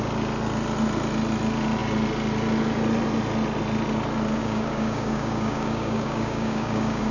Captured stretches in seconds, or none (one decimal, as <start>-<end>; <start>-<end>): 0.0-4.4